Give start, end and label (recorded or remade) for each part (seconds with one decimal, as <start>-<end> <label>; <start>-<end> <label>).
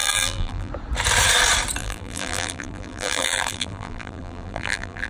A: 0.0-0.7 remade; 0.7-1.8 recorded; 1.8-5.1 remade